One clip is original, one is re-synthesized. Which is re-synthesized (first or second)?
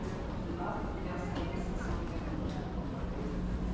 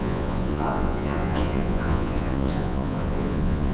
second